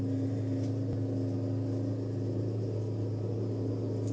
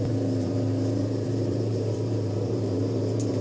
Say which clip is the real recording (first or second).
first